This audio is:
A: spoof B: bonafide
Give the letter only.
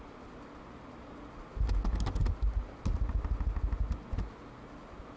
B